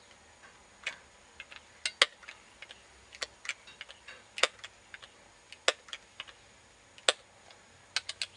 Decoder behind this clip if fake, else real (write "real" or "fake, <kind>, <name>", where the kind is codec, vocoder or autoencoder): real